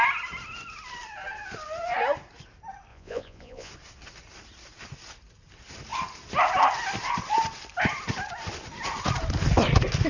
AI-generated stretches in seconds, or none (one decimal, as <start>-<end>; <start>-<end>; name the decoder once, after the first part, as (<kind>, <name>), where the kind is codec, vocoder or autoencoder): 2.9-3.7 (vocoder, Vocos)